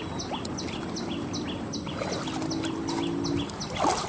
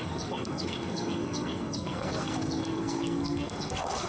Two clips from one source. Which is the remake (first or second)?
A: second